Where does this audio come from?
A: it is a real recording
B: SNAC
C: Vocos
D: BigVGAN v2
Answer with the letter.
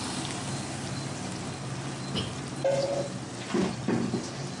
A